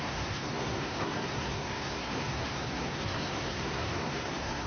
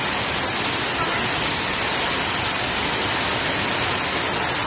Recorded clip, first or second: second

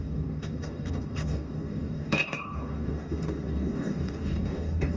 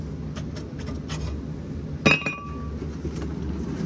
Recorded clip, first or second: second